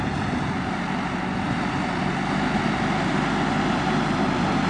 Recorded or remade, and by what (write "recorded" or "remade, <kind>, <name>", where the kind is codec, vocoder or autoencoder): recorded